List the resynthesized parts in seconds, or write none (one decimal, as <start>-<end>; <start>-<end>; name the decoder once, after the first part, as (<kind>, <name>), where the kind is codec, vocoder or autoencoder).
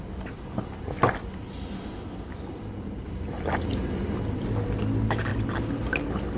none